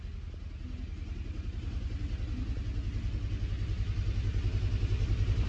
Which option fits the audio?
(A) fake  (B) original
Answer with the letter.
B